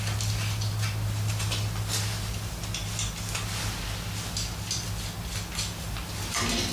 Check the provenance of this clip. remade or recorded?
recorded